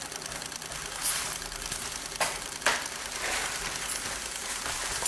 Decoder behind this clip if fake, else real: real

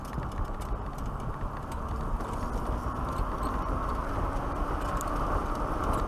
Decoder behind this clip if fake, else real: real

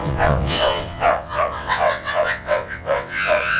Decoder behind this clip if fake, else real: fake, vocoder, WaveNeXt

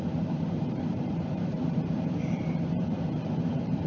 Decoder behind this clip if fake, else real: fake, vocoder, BigVGAN v2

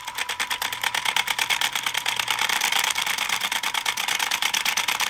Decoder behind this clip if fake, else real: real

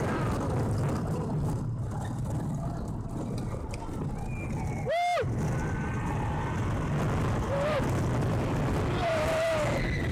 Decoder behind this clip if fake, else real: real